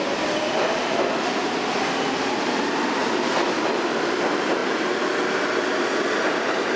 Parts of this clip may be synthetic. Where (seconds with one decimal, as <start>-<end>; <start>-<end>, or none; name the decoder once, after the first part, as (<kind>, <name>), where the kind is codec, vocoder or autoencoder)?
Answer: none